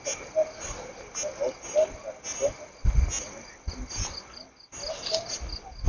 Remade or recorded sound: recorded